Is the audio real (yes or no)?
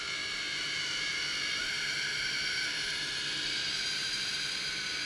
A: no